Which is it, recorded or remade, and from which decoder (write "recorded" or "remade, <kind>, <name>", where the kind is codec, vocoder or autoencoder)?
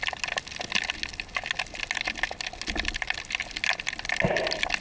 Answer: recorded